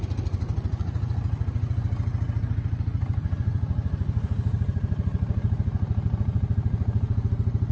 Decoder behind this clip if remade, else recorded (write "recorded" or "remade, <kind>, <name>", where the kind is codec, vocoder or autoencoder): recorded